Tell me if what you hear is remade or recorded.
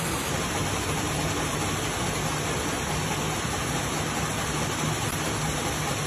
recorded